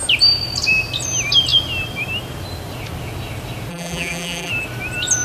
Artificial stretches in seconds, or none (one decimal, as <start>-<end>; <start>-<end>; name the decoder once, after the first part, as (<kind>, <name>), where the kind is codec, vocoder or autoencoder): 3.7-4.5 (vocoder, BigVGAN v2)